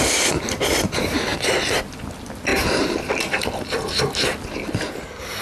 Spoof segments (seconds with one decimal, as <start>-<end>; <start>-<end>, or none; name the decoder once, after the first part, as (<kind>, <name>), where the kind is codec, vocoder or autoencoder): none